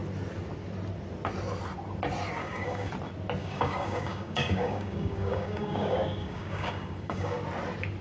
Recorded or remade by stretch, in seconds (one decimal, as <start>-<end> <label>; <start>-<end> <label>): 0.0-2.4 recorded; 2.4-2.9 remade; 2.9-3.4 recorded; 3.4-7.4 remade; 7.4-8.0 recorded